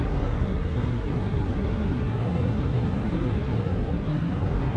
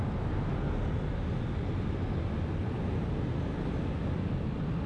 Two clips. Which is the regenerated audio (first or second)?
first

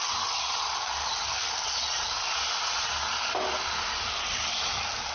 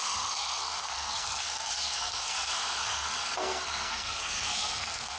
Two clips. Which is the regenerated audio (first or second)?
second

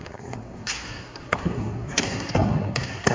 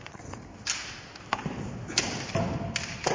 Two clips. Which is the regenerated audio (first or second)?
first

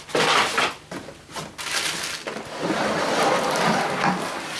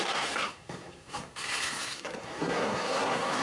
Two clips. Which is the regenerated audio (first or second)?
second